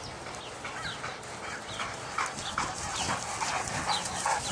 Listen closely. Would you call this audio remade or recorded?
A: recorded